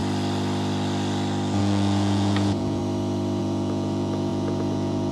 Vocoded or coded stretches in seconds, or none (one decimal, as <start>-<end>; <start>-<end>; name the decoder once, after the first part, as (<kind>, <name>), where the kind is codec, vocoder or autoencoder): 1.6-2.8 (vocoder, Vocos); 3.4-5.1